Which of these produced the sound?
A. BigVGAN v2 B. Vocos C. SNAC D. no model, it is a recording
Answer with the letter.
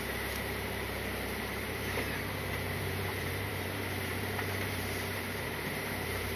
A